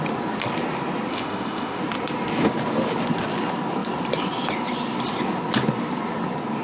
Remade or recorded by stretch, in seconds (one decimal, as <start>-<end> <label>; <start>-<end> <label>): 0.0-1.1 recorded; 1.1-1.8 remade; 1.8-6.6 recorded